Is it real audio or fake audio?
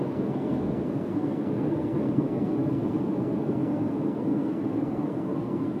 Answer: fake